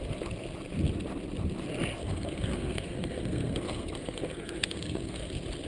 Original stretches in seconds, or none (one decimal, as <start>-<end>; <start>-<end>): 0.0-2.0; 5.3-5.7